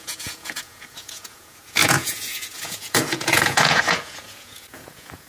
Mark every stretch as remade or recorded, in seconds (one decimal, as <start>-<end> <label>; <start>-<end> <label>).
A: 0.0-5.3 remade